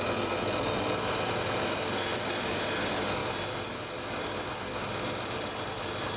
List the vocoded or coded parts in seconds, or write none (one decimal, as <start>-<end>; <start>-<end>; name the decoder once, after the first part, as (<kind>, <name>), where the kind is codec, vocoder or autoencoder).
2.1-2.7 (vocoder, BigVGAN v2)